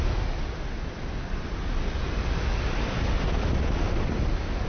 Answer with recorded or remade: recorded